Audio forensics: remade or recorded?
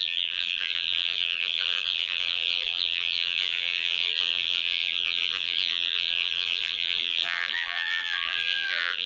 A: remade